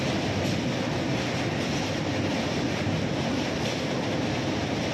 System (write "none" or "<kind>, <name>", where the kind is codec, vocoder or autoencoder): none